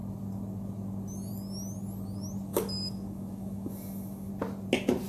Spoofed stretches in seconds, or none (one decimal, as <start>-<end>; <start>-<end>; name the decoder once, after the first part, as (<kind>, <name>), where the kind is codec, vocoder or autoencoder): 2.5-4.3 (autoencoder, DAC-VAE)